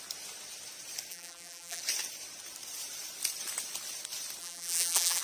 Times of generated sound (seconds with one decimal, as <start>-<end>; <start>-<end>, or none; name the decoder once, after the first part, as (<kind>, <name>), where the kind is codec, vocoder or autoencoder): 1.1-1.8 (vocoder, BigVGAN v2); 4.4-5.2